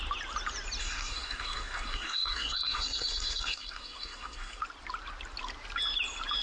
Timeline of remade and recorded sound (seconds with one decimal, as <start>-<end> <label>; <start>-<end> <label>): 0.0-0.8 recorded; 0.8-4.6 remade; 4.6-6.4 recorded

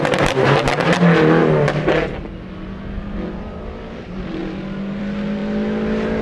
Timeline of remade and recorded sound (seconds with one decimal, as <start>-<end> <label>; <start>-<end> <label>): 0.0-6.2 recorded

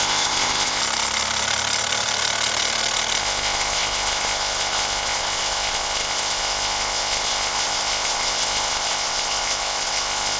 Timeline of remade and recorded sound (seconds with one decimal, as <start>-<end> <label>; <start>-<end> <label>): 0.0-0.8 remade; 0.8-3.2 recorded; 3.2-10.4 remade

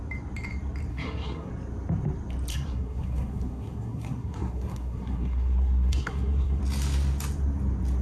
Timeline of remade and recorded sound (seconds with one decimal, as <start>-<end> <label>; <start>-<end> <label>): 0.0-0.9 recorded; 0.9-1.5 remade; 1.5-2.5 recorded; 2.5-6.6 remade; 6.6-8.0 recorded

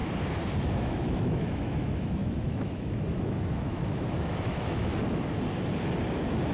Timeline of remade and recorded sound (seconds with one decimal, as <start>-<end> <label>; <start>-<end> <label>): 0.0-0.6 recorded; 0.6-4.9 remade; 4.9-6.5 recorded

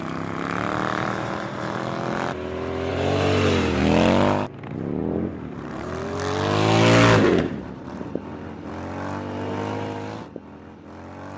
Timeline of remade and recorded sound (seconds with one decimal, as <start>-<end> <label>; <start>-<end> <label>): 0.0-0.9 recorded; 0.9-1.8 remade; 1.8-2.9 recorded; 2.9-3.8 remade; 3.8-5.0 recorded; 5.0-5.9 remade; 5.9-7.3 recorded; 7.3-8.7 remade; 8.7-11.4 recorded

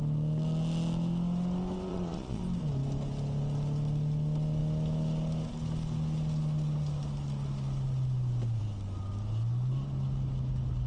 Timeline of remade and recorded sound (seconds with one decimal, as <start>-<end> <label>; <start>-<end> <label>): 0.0-1.9 recorded; 1.9-2.4 remade; 2.4-10.9 recorded

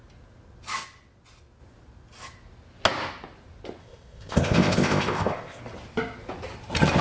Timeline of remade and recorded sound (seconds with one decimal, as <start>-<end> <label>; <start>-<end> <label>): 0.0-3.8 recorded; 3.8-5.6 remade; 5.6-7.0 recorded